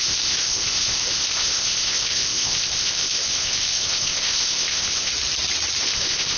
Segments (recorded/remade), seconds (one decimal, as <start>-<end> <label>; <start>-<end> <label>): 0.0-5.1 remade; 5.1-5.8 recorded; 5.8-6.4 remade